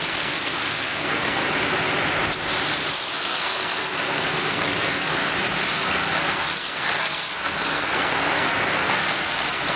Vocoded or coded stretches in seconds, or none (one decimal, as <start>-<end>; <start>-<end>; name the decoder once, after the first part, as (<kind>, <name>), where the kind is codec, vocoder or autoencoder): 0.0-1.4 (codec, SNAC); 2.9-5.2; 5.7-9.8